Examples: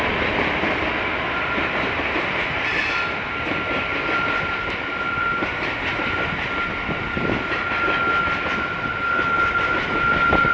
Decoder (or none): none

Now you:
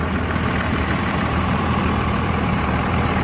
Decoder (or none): vocoder, BigVGAN v2